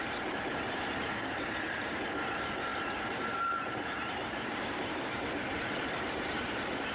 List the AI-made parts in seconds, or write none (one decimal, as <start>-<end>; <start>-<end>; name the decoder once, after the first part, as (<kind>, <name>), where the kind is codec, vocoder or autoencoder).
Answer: 0.0-1.9 (vocoder, BigVGAN v2); 2.7-6.9

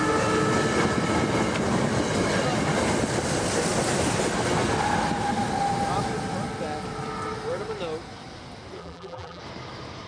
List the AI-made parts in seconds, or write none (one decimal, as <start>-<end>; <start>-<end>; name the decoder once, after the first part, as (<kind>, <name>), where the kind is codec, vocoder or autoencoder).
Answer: 8.8-9.4 (vocoder, BigVGAN v2)

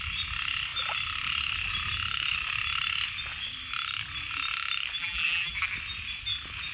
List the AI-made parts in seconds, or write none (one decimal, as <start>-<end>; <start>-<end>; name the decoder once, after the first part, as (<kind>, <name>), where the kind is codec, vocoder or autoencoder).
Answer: 5.0-5.5 (vocoder, BigVGAN v2)

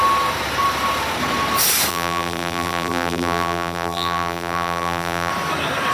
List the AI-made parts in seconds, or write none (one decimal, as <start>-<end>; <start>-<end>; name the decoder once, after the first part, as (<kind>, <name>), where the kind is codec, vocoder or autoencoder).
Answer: 1.9-5.3 (vocoder, BigVGAN v2)

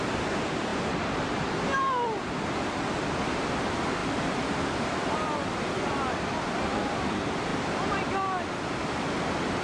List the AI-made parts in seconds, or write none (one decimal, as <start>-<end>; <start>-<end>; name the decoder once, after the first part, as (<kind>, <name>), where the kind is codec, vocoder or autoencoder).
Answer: 0.0-0.7 (vocoder, BigVGAN v2); 1.4-4.0; 4.5-9.6

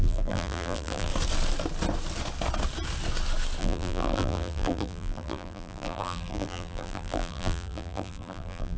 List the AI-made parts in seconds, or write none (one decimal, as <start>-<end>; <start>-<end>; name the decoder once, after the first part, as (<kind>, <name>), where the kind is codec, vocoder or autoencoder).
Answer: 0.0-1.1 (vocoder, BigVGAN v2); 3.6-8.8

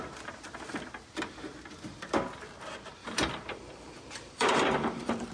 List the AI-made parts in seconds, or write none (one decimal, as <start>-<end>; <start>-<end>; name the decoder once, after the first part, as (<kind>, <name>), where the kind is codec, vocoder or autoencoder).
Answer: 3.0-5.3 (vocoder, BigVGAN v2)